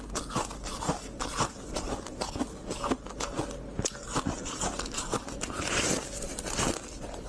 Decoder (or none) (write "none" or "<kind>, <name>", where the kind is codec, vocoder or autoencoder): none